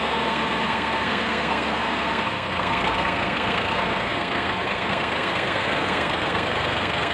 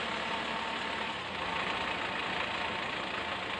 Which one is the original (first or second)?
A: second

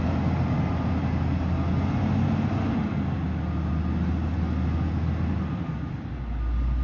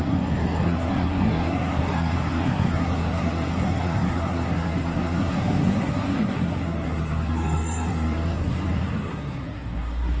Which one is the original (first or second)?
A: first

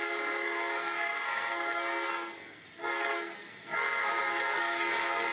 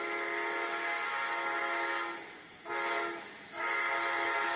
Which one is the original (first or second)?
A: second